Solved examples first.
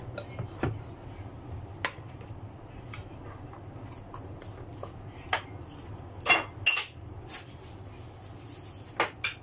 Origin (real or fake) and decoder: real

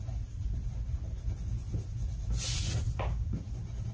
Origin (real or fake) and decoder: real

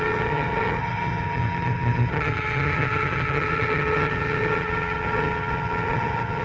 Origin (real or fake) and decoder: fake, vocoder, HiFi-GAN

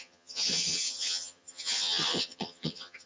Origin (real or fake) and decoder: fake, vocoder, HiFi-GAN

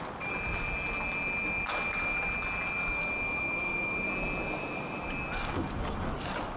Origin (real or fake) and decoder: real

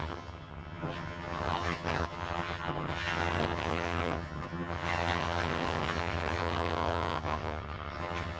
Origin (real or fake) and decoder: fake, vocoder, HiFi-GAN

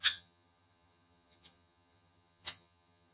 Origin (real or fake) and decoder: fake, vocoder, HiFi-GAN